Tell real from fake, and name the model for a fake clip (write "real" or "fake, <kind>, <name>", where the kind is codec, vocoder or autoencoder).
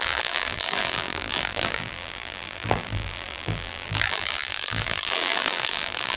fake, vocoder, BigVGAN v2